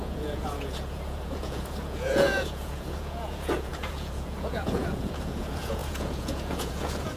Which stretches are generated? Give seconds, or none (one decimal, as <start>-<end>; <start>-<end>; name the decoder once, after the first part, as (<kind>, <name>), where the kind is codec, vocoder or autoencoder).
0.0-7.2 (vocoder, Vocos)